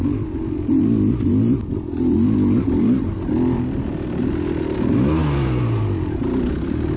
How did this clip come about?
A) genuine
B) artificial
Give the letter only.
A